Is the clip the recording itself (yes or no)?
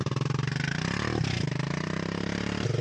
no